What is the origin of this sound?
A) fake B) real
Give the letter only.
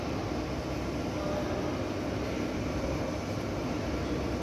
B